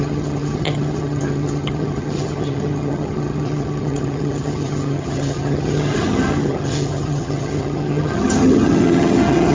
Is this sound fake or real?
fake